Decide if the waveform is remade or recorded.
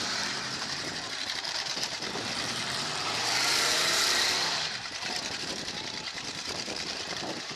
remade